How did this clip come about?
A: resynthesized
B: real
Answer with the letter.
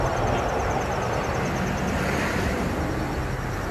B